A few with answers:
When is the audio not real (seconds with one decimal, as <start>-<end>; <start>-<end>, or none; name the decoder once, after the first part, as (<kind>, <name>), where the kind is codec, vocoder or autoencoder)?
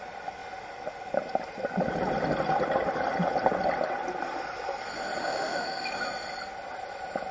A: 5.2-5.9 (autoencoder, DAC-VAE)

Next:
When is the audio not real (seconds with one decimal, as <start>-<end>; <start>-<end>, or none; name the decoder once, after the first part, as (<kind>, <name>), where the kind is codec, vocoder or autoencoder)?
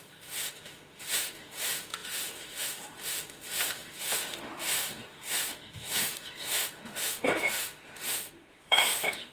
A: 0.0-9.3 (autoencoder, DAC-VAE)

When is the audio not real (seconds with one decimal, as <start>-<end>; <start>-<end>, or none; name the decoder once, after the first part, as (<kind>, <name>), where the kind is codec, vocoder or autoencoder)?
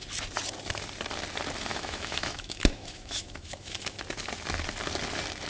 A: 1.7-4.0 (autoencoder, DAC-VAE)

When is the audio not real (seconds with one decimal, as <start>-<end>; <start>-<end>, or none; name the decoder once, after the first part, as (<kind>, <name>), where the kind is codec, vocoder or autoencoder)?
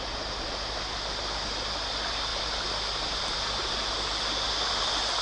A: none